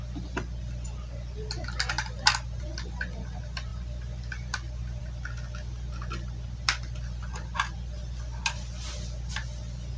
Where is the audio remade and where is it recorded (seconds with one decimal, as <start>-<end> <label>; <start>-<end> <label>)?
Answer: 0.0-10.0 recorded